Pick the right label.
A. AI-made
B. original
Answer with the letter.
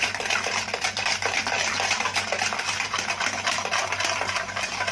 B